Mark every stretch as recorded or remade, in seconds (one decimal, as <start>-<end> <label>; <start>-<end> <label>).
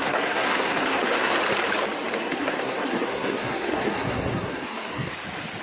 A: 0.0-1.4 remade; 1.4-2.2 recorded; 2.2-5.1 remade; 5.1-5.6 recorded